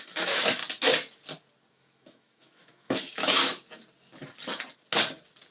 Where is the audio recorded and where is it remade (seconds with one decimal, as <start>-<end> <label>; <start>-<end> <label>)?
0.0-0.6 remade; 0.6-1.7 recorded; 1.7-3.4 remade; 3.4-5.5 recorded